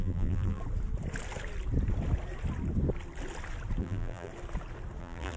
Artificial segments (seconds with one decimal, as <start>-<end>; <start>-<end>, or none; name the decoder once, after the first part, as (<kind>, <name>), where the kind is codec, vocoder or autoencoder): 0.0-0.6 (vocoder, BigVGAN v2); 3.8-4.3; 5.0-5.4

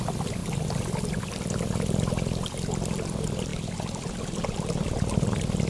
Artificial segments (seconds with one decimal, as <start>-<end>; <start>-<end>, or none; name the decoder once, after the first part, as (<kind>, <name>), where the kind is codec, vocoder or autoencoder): none

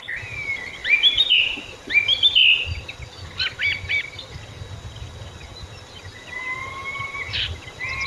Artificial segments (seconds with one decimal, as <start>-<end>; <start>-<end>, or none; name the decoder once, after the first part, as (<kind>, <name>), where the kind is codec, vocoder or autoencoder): 0.8-1.6 (vocoder, BigVGAN v2)